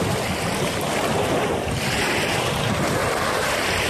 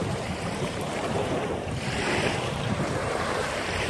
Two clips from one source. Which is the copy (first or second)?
second